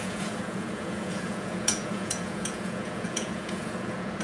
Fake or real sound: fake